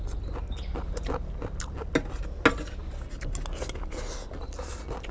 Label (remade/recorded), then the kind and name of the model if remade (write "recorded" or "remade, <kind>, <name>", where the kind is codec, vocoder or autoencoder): recorded